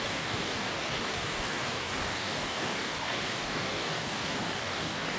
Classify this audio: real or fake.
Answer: fake